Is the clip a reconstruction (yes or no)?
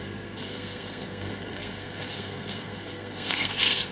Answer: yes